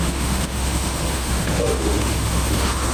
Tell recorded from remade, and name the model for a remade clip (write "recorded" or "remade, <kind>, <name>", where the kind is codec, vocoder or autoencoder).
remade, autoencoder, DAC-VAE